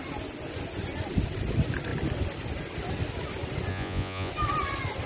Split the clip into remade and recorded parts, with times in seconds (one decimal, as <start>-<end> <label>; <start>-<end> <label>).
0.0-3.7 recorded; 3.7-4.3 remade; 4.3-5.1 recorded